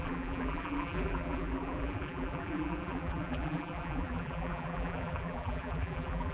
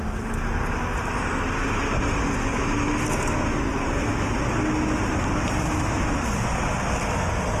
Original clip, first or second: second